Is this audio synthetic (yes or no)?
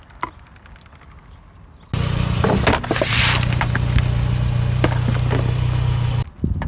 no